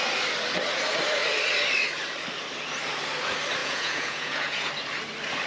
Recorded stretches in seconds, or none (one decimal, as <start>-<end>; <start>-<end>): 0.0-3.6; 4.7-5.5